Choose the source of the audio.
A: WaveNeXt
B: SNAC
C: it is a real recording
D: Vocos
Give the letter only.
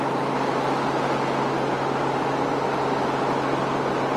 C